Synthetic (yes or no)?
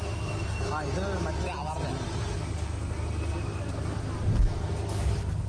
no